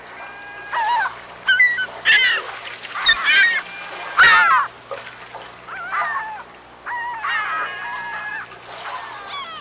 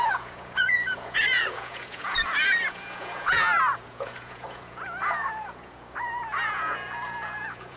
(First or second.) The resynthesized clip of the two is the second